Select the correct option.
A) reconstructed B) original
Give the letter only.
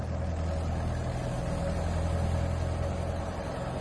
B